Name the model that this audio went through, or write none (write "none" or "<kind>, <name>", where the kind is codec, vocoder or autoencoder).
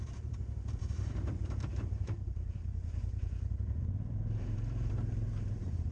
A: vocoder, BigVGAN v2